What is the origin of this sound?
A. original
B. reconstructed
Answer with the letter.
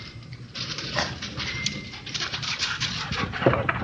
B